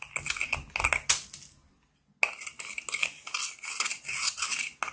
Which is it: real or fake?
real